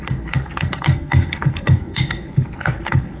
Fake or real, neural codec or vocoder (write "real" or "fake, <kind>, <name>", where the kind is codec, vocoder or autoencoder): fake, codec, SNAC